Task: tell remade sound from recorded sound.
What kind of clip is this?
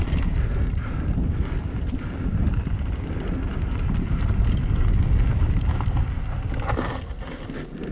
recorded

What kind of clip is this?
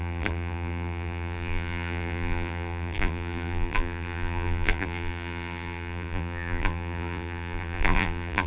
remade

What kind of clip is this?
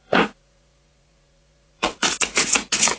remade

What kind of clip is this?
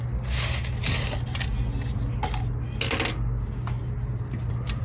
recorded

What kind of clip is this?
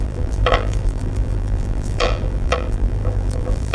remade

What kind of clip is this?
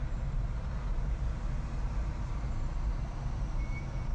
recorded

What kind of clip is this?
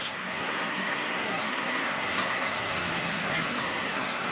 remade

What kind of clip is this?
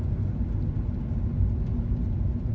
recorded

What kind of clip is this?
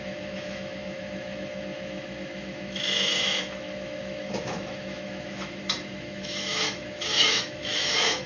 remade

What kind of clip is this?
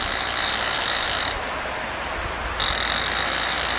recorded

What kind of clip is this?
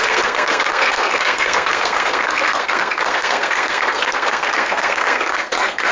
remade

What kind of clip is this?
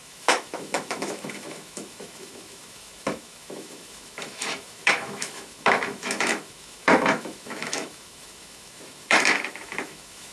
remade